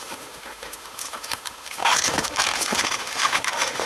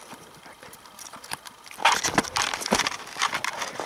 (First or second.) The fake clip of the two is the first